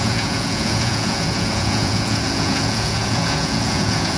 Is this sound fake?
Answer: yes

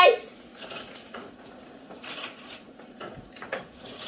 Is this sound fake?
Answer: yes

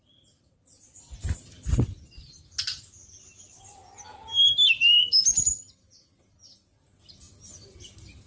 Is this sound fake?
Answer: no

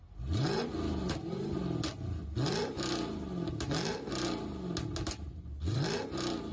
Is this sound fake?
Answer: no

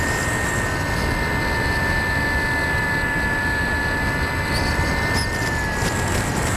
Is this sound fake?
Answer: no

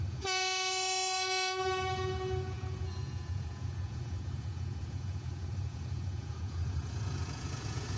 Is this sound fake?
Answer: yes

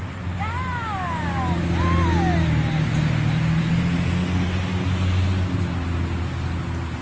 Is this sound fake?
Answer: no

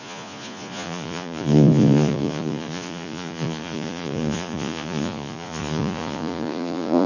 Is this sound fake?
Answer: yes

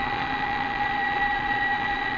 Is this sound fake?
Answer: yes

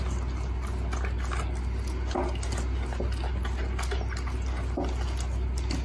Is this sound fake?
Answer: no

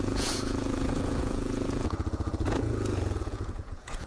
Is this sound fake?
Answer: yes